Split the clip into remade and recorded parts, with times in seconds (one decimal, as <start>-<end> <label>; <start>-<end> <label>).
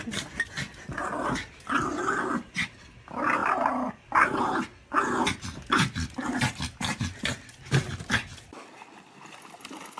0.0-10.0 recorded